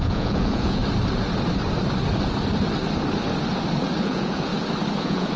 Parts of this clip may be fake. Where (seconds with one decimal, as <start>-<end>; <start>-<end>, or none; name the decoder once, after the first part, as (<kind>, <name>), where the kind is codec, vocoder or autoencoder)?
0.0-0.8 (vocoder, Vocos); 4.0-4.5; 5.0-5.4